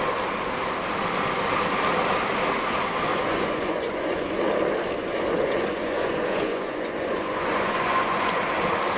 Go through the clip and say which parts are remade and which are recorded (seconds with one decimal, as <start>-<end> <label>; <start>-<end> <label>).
0.0-3.1 recorded; 3.1-4.4 remade; 4.4-5.0 recorded; 5.0-8.4 remade; 8.4-9.0 recorded